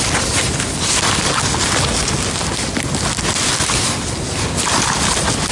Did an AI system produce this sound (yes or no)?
no